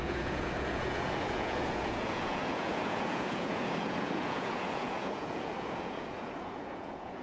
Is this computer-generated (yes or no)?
yes